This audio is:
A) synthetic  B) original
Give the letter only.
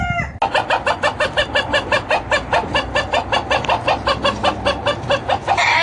B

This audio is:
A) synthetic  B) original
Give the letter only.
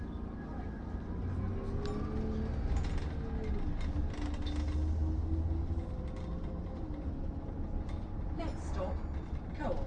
B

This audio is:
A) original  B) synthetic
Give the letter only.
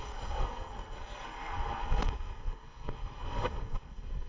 B